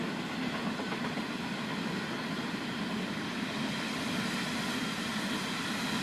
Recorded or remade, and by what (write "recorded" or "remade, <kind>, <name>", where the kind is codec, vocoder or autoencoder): recorded